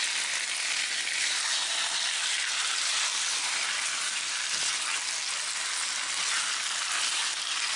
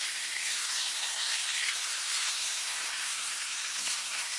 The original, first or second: first